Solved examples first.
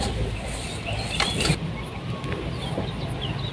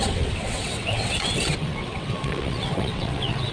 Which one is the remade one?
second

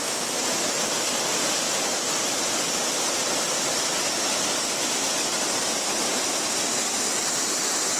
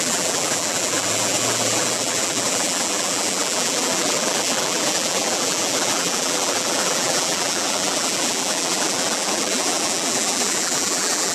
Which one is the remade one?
second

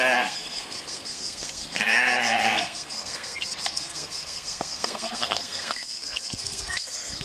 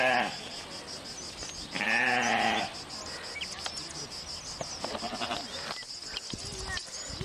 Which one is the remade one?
first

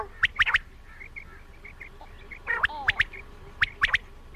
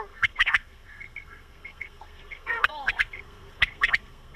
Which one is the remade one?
second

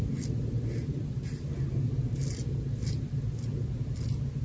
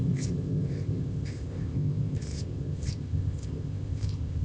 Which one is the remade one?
second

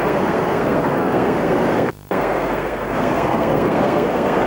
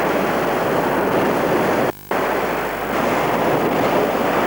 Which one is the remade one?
first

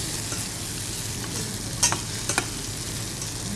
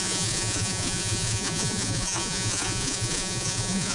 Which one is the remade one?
second